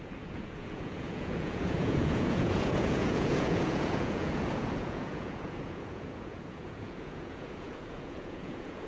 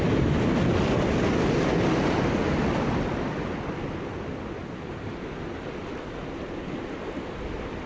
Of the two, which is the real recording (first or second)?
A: second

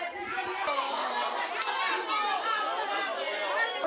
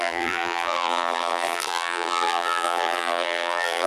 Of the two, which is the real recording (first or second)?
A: first